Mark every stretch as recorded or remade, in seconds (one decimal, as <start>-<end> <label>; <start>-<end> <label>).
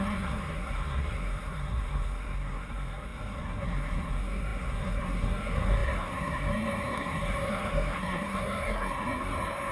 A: 0.0-9.7 remade